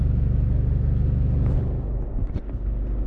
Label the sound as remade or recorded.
recorded